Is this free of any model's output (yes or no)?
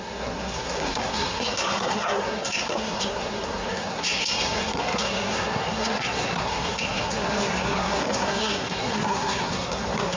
no